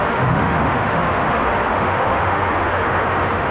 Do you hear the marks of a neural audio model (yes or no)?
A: yes